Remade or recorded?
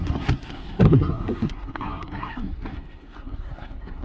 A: remade